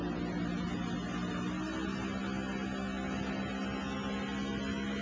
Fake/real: real